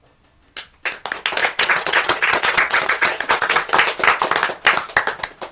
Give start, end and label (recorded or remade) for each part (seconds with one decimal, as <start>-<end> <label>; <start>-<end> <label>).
0.0-1.4 recorded; 1.4-3.7 remade; 3.7-5.5 recorded